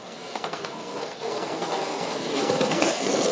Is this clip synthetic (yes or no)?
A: yes